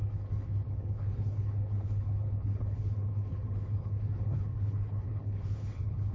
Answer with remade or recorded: remade